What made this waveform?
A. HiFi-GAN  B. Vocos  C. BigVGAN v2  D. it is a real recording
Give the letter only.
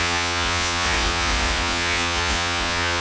B